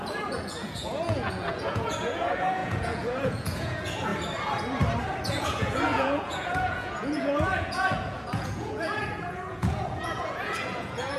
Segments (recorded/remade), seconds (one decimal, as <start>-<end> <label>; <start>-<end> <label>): 0.0-4.1 remade; 4.1-5.3 recorded; 5.3-11.2 remade